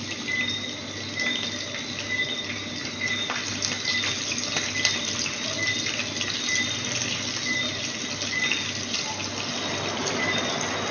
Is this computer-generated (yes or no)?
no